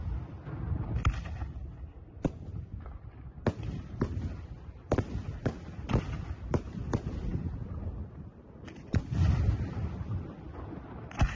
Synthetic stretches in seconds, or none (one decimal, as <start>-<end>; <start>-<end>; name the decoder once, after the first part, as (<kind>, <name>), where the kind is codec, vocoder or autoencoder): none